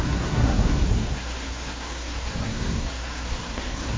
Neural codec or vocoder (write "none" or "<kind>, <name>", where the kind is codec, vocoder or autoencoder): codec, SNAC